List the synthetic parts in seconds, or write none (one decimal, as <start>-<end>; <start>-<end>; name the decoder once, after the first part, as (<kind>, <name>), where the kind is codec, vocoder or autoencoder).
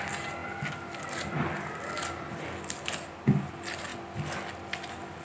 none